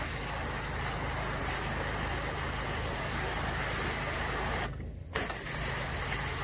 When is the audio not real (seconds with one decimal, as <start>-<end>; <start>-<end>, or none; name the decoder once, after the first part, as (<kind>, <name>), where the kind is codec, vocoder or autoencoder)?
none